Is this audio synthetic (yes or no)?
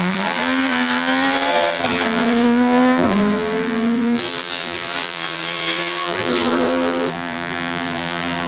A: yes